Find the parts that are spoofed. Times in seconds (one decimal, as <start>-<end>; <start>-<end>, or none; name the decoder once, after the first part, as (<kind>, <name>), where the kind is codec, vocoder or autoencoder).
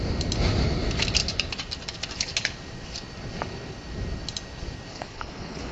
4.9-5.7 (codec, HILCodec)